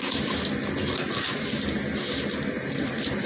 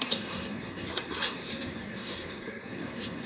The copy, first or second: second